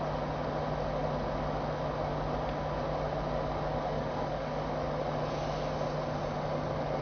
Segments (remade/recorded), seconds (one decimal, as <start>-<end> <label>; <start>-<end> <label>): 0.0-3.7 recorded; 3.7-4.9 remade; 4.9-7.0 recorded